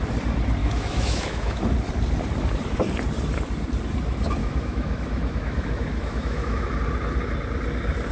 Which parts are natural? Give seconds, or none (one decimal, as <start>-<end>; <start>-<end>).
0.0-0.6; 1.6-4.4; 6.8-8.1